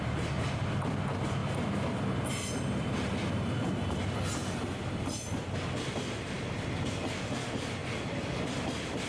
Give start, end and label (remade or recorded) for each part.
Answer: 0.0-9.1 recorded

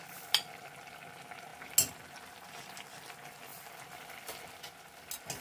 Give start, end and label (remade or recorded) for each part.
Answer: 0.0-5.4 recorded